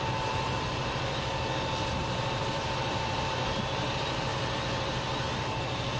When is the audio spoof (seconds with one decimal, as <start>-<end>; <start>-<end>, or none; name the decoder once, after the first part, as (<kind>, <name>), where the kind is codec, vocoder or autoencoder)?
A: 0.0-1.3 (vocoder, BigVGAN v2); 2.0-4.3; 5.3-6.0